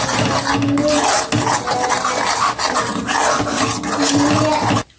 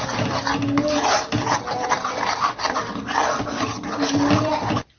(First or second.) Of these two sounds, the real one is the first